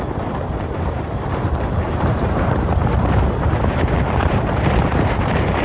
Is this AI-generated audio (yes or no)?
yes